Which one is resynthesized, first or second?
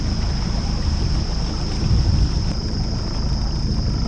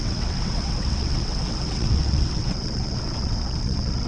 second